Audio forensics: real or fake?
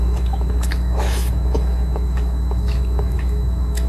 fake